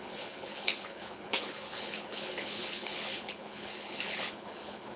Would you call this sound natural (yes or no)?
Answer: no